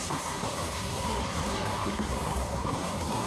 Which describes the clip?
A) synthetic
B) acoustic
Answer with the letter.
A